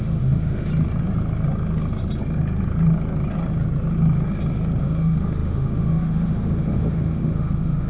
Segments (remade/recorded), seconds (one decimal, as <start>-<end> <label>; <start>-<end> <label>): 0.0-0.7 remade; 0.7-4.8 recorded; 4.8-7.9 remade